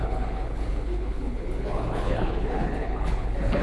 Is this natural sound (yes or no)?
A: no